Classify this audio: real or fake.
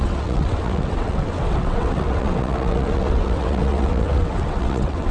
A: fake